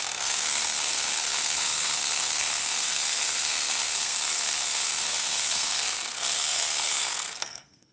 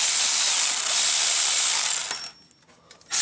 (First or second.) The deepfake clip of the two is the first